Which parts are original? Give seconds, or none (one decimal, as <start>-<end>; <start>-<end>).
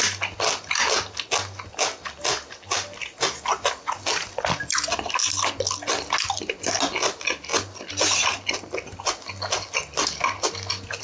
0.0-11.0